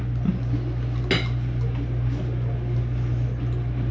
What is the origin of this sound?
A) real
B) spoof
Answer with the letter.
A